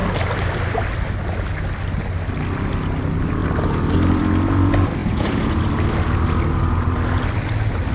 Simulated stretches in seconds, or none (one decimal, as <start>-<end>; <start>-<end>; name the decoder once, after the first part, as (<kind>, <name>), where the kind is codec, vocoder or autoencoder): 5.0-5.6 (vocoder, Vocos)